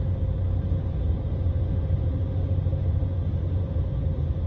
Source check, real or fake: real